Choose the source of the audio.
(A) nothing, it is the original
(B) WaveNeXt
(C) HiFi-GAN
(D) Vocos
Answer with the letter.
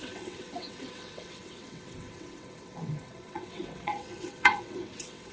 B